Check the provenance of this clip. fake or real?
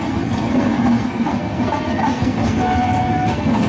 fake